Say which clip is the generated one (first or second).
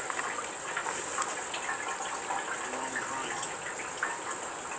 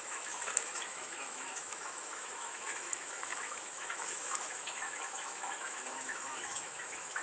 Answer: second